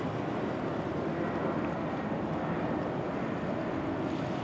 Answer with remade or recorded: recorded